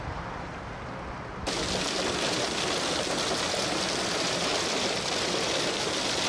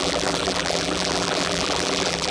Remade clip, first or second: second